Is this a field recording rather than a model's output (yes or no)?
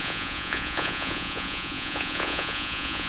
no